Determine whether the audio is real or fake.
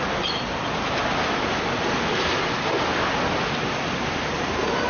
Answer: real